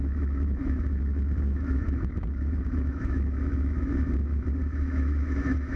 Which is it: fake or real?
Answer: fake